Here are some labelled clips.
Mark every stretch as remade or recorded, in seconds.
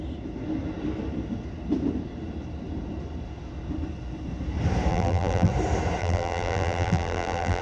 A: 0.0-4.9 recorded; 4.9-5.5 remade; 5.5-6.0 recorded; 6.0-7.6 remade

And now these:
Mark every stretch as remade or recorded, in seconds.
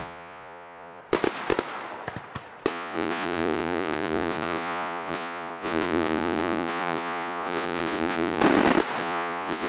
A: 0.0-1.0 remade; 1.0-2.7 recorded; 2.7-8.4 remade; 8.4-9.0 recorded; 9.0-9.7 remade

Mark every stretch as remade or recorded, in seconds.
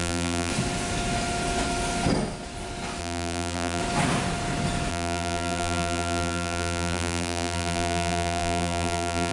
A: 0.0-0.5 remade; 0.5-3.0 recorded; 3.0-3.8 remade; 3.8-4.9 recorded; 4.9-9.3 remade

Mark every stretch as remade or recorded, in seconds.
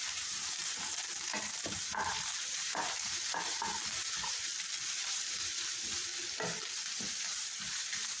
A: 0.0-4.5 remade; 4.5-5.1 recorded; 5.1-6.1 remade; 6.1-7.1 recorded; 7.1-8.2 remade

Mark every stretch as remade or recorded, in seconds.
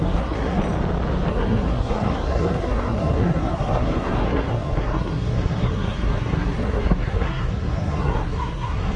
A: 0.0-0.6 remade; 0.6-1.3 recorded; 1.3-9.0 remade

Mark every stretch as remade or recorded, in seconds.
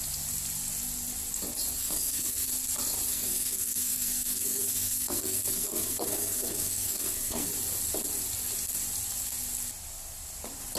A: 0.0-1.8 recorded; 1.8-2.5 remade; 2.5-3.1 recorded; 3.1-7.5 remade; 7.5-10.8 recorded